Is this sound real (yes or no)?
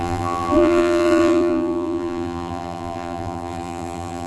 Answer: no